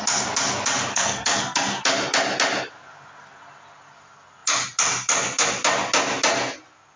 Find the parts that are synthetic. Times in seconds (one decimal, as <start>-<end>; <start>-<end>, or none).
0.9-1.8